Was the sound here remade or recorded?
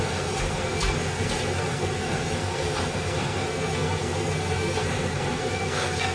remade